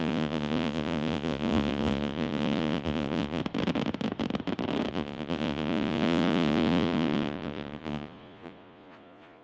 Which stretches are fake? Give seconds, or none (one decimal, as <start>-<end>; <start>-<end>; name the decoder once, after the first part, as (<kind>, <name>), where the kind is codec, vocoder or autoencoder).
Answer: 0.0-3.4 (vocoder, Vocos); 4.9-9.4